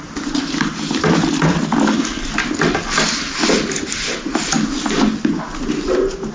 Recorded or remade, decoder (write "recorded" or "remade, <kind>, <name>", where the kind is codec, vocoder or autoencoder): recorded